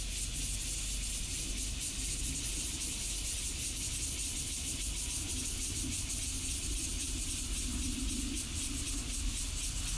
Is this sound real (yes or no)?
yes